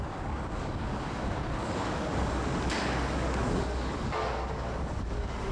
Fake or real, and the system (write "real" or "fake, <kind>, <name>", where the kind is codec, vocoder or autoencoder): fake, codec, DAC